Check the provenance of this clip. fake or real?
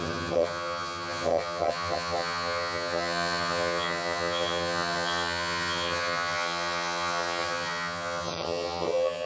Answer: fake